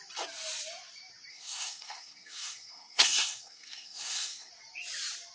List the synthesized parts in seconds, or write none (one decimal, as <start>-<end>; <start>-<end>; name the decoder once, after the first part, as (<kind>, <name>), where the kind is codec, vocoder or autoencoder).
1.3-4.5 (codec, SNAC)